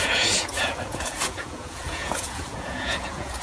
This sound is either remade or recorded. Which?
remade